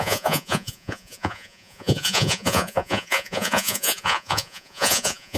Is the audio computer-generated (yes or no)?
yes